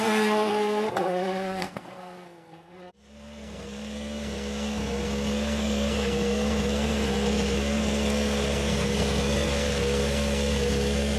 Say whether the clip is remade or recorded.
remade